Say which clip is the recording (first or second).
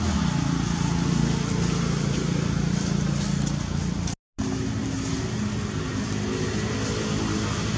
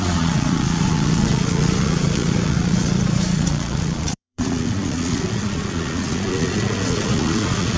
first